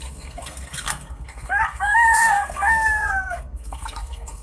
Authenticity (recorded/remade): remade